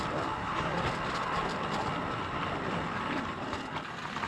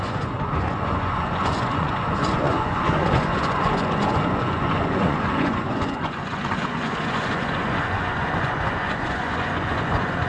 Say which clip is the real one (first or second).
first